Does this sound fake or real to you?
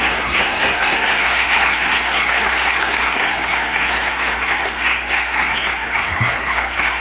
fake